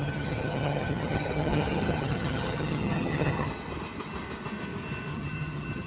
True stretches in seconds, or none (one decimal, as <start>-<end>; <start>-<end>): 3.5-5.1